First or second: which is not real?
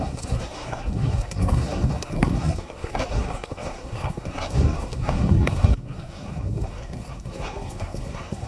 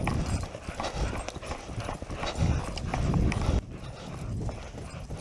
first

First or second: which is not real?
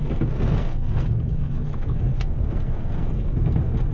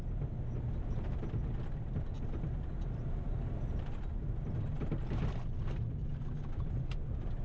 first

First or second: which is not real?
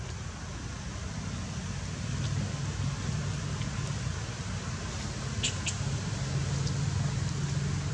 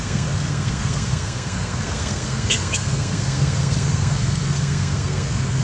second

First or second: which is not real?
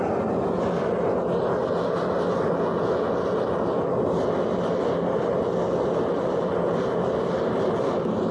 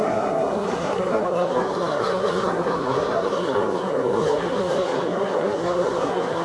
second